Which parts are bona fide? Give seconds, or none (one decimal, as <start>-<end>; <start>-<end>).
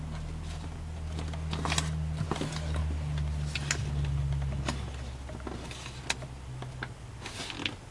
0.0-7.9